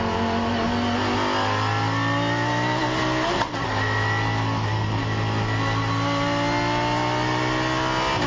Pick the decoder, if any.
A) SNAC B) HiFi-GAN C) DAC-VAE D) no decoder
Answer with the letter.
D